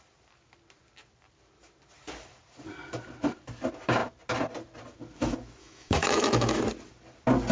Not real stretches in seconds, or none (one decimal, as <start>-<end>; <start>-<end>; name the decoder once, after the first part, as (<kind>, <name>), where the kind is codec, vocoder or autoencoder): 5.6-6.6 (autoencoder, DAC-VAE)